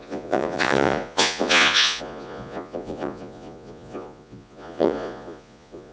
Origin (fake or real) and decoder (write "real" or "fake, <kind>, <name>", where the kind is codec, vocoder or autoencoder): fake, vocoder, Vocos